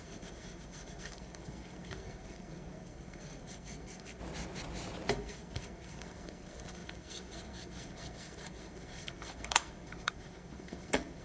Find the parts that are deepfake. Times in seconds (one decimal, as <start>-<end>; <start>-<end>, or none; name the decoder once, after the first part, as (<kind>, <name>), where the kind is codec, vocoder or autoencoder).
0.0-4.2 (codec, SNAC); 5.1-11.2